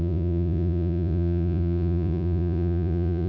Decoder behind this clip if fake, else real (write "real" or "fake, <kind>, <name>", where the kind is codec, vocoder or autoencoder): fake, vocoder, Vocos